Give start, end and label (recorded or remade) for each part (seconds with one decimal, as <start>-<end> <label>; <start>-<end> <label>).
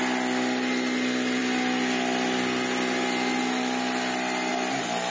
0.0-5.1 recorded